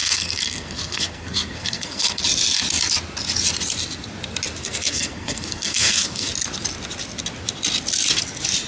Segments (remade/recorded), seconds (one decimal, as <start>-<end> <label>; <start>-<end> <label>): 0.0-2.2 remade; 2.2-4.6 recorded; 4.6-6.3 remade; 6.3-8.7 recorded